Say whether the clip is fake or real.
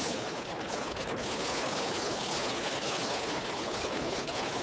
fake